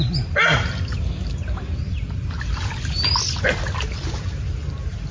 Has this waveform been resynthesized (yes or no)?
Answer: no